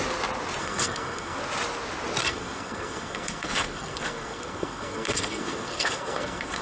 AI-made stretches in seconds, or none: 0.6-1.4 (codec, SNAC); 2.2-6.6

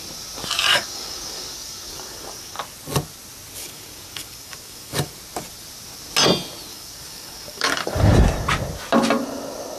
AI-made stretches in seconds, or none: 0.7-2.6 (codec, DAC); 3.6-5.1; 6.7-8.1

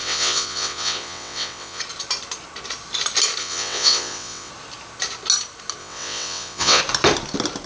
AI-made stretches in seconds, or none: 0.0-1.8 (vocoder, WaveNeXt); 3.4-4.5; 5.8-6.8

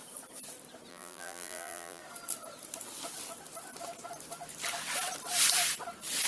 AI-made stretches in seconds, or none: 0.9-2.0 (vocoder, BigVGAN v2)